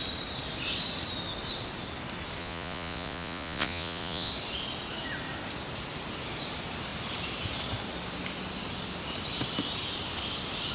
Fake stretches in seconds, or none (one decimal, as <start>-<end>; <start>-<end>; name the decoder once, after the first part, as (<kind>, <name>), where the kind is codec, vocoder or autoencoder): 2.4-4.3 (vocoder, Vocos)